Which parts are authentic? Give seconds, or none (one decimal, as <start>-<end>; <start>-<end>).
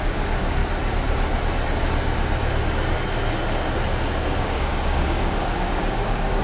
0.6-4.4